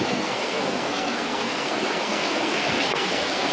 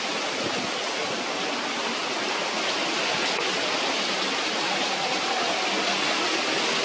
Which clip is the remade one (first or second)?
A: first